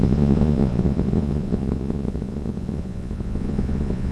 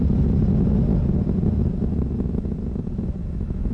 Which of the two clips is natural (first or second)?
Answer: second